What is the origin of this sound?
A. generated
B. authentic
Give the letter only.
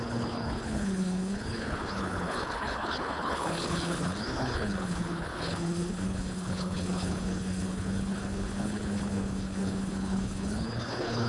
A